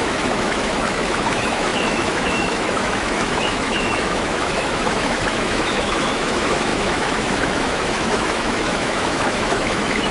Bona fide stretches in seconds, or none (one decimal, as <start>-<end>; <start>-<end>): none